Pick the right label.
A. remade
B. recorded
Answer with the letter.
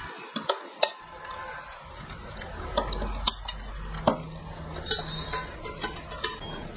B